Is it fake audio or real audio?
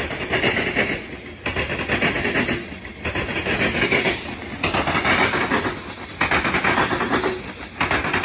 real